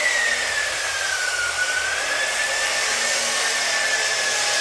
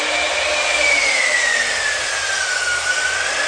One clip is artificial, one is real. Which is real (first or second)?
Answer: second